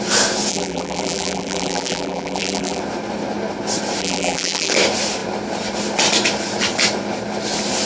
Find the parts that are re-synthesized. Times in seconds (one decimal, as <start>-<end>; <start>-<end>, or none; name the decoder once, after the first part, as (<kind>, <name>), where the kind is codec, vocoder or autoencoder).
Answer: 0.5-2.8 (vocoder, BigVGAN v2); 4.0-4.7

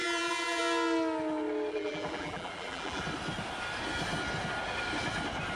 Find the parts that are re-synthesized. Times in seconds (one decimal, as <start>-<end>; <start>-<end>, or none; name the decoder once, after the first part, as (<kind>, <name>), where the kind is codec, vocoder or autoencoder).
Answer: 0.0-0.6 (vocoder, BigVGAN v2); 1.7-3.0

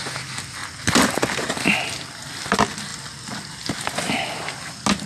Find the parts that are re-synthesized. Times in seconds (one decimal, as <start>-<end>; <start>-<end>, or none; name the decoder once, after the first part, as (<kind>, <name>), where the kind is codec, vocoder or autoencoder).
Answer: none

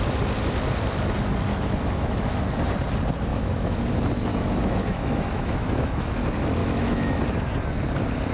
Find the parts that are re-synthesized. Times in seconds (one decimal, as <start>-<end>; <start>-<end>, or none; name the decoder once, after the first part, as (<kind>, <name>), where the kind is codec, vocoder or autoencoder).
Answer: 1.5-2.4 (autoencoder, DAC-VAE); 3.3-3.8; 4.3-6.1; 6.6-7.2

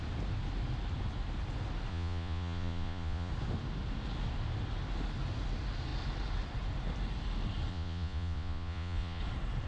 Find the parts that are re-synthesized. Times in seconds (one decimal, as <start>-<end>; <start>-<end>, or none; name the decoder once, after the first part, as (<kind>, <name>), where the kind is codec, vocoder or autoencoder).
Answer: 1.9-3.3 (vocoder, Vocos); 7.7-9.2